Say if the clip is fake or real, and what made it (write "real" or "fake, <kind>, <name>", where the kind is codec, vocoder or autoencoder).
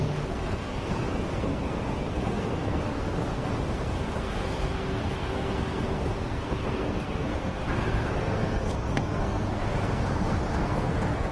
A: fake, codec, SNAC